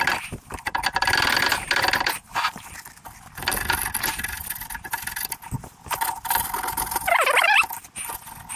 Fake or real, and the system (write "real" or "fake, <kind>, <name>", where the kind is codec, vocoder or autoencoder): real